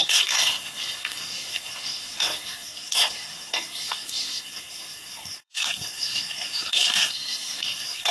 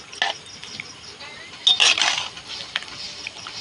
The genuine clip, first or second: second